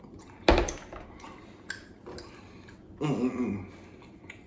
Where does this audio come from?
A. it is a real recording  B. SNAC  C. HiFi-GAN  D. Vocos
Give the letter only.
A